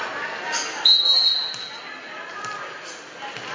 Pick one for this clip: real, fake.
real